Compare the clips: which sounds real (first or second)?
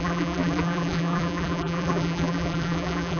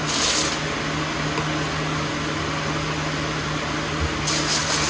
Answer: second